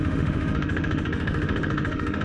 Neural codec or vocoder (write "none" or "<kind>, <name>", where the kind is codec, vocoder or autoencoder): autoencoder, DAC-VAE